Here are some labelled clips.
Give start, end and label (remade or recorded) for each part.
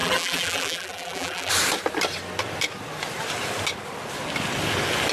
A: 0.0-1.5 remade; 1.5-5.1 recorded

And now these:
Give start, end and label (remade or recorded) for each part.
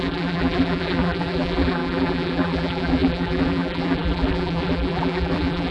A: 0.0-5.7 remade